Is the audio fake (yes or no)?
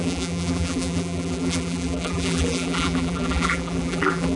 yes